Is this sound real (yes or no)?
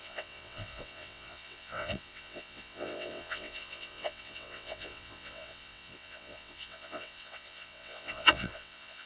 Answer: no